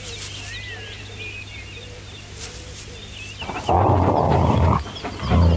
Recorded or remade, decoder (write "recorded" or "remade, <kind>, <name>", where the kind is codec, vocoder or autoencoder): recorded